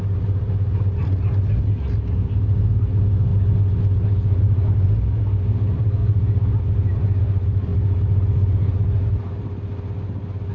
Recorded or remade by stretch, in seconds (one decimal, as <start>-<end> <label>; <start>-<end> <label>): 0.0-3.3 remade; 3.3-4.1 recorded; 4.1-6.0 remade; 6.0-6.6 recorded; 6.6-10.5 remade